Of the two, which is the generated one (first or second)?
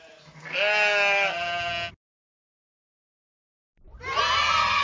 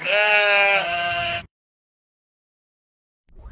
second